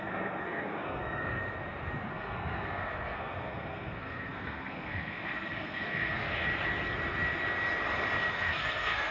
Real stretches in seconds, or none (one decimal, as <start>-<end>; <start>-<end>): 1.6-2.1; 6.3-8.3